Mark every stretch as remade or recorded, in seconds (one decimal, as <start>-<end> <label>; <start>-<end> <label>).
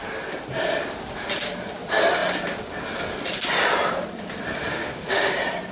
0.0-4.7 recorded; 4.7-5.3 remade; 5.3-5.7 recorded